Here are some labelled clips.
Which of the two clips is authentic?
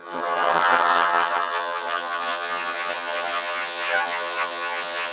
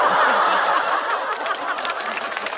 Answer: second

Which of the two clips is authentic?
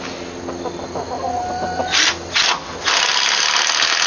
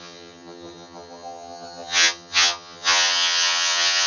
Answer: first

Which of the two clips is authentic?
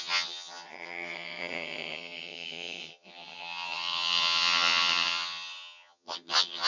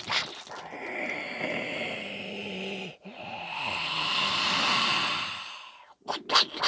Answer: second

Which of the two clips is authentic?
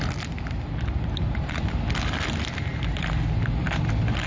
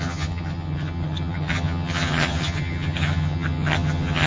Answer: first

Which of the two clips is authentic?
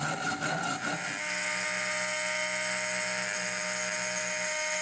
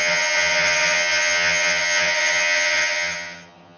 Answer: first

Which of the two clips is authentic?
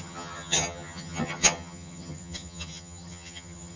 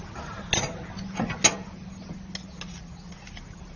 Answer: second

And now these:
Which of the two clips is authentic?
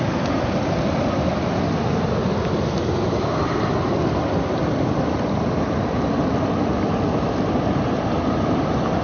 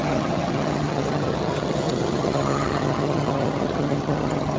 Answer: first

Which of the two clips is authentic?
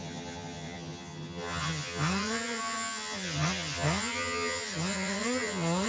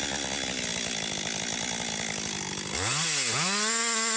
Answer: second